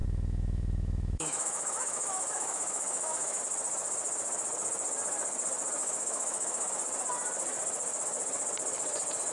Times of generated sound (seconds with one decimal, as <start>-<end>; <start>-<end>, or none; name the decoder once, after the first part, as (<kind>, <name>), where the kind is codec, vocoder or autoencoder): 0.0-3.4 (autoencoder, DAC-VAE); 5.8-6.7